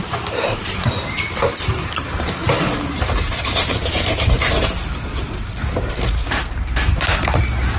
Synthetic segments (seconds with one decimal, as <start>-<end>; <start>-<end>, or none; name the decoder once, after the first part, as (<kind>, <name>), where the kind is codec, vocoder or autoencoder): 0.0-5.1 (vocoder, BigVGAN v2); 5.9-7.8